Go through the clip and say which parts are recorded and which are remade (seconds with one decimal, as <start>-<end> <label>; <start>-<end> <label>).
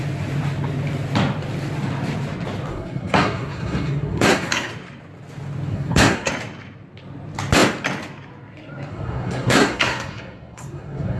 0.0-2.7 recorded; 2.7-4.7 remade; 4.7-5.7 recorded; 5.7-6.3 remade; 6.3-8.9 recorded; 8.9-11.2 remade